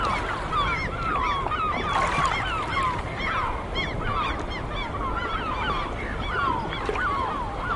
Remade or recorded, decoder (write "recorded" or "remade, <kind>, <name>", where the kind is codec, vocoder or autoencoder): recorded